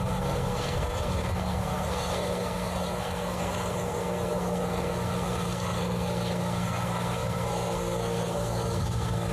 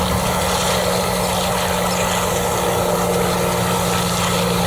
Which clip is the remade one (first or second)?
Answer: first